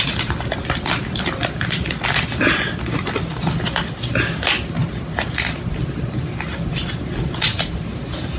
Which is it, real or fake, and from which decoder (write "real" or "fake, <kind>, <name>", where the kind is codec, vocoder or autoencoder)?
real